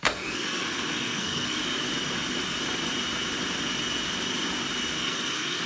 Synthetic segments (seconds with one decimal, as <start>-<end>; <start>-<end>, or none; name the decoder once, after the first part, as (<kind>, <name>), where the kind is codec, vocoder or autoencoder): 0.0-1.6 (codec, SNAC); 5.0-5.7